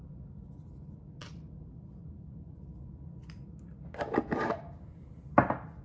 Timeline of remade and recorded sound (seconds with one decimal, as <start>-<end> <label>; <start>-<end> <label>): 0.0-5.8 recorded